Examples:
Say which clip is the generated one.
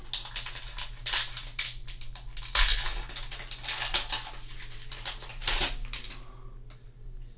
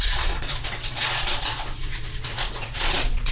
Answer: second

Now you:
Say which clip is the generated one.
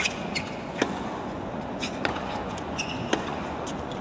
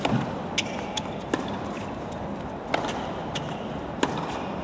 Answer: first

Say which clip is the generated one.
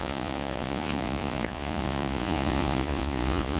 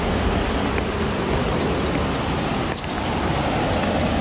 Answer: first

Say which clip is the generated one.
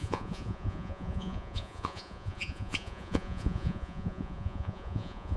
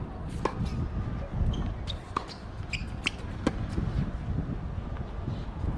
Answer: first